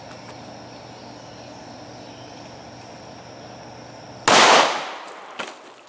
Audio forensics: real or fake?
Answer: real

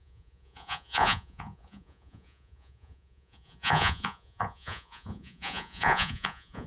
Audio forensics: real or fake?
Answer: fake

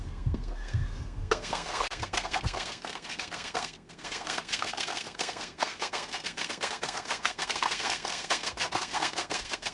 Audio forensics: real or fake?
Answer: fake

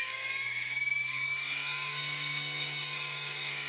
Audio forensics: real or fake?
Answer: fake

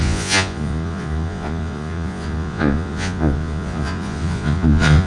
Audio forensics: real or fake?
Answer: fake